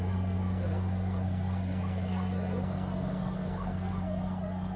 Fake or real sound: fake